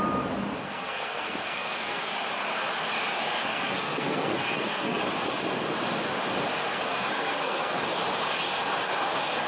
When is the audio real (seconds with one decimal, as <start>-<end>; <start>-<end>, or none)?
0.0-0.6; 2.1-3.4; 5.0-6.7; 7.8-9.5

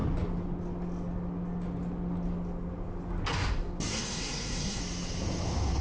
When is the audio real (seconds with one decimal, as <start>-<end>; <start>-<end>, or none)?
0.0-3.9; 4.8-5.8

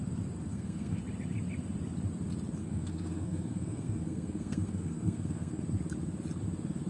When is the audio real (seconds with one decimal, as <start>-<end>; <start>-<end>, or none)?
0.0-0.5; 1.0-2.6; 5.6-6.9